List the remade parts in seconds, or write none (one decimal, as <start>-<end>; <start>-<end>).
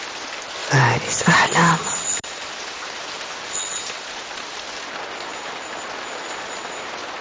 0.6-3.5; 5.3-7.2